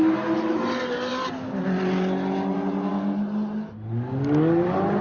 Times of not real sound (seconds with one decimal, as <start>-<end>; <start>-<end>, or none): none